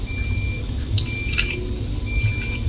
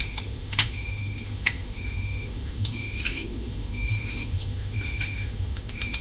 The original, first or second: first